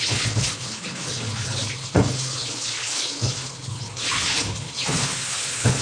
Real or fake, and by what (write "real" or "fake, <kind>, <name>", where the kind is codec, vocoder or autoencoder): fake, codec, HILCodec